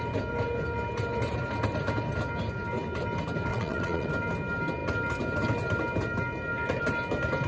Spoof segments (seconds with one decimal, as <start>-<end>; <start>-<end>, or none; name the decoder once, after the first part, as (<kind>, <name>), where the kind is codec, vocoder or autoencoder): 3.5-4.1 (vocoder, Vocos)